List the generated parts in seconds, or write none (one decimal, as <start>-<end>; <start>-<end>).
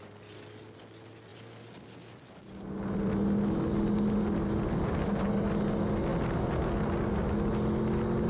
none